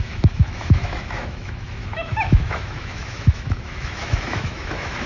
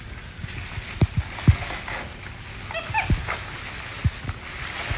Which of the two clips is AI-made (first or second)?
first